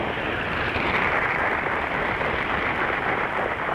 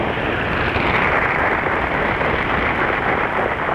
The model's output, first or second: first